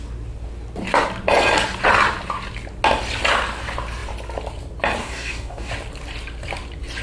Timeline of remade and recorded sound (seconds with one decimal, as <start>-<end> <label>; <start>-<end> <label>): 0.0-5.0 recorded; 5.0-5.7 remade; 5.7-7.0 recorded

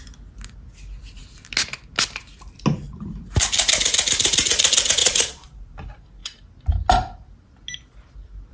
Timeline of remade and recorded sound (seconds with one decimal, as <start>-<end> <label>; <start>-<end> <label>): 0.0-5.0 recorded; 5.0-5.6 remade; 5.6-8.5 recorded

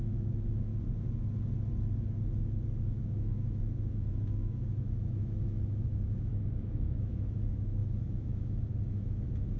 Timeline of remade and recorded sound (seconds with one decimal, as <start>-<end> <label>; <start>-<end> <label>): 0.0-0.7 remade; 0.7-2.9 recorded; 2.9-9.6 remade

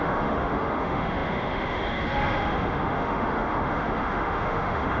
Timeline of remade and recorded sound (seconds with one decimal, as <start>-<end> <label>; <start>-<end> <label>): 0.0-5.0 remade

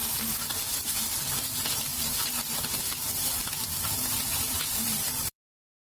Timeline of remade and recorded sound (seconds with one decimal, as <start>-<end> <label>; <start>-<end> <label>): 0.0-1.2 recorded; 1.2-1.9 remade; 1.9-3.8 recorded; 3.8-5.8 remade

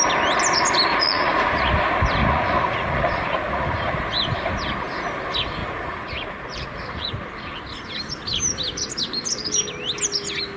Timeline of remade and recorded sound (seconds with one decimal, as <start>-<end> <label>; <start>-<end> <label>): 0.0-0.9 recorded; 0.9-1.7 remade; 1.7-2.2 recorded; 2.2-4.0 remade; 4.0-5.6 recorded; 5.6-7.1 remade; 7.1-10.6 recorded

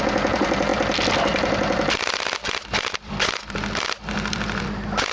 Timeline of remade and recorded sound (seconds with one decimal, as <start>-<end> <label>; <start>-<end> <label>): 0.0-5.1 remade